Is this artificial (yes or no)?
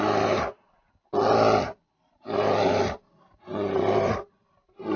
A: no